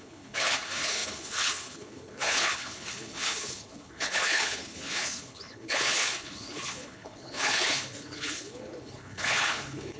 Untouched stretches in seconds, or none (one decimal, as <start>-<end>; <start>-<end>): none